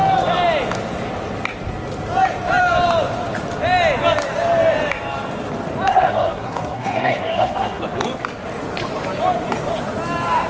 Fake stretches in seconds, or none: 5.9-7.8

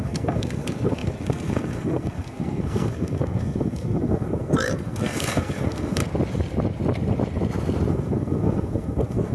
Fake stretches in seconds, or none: 0.0-6.0; 7.9-9.3

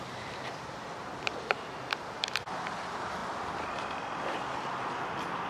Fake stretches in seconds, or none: none